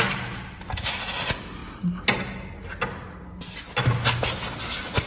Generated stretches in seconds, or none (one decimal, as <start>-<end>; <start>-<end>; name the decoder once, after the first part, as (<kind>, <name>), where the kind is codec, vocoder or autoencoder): none